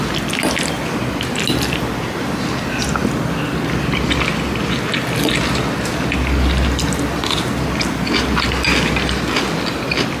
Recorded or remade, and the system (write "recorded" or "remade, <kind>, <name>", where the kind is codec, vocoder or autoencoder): recorded